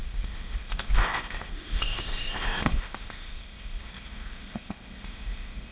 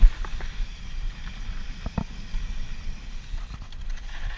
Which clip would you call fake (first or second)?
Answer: first